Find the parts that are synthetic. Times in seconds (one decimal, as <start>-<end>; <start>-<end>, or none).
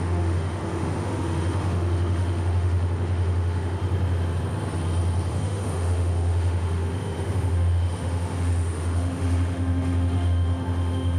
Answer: 0.0-3.8; 5.3-11.2